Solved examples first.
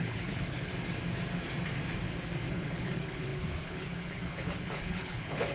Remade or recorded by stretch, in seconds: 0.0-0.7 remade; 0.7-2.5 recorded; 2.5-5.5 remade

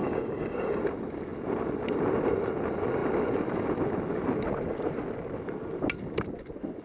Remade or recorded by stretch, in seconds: 0.0-0.8 remade; 0.8-6.8 recorded

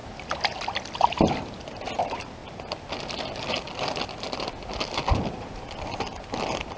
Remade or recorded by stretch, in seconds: 0.0-2.4 remade; 2.4-4.6 recorded; 4.6-6.8 remade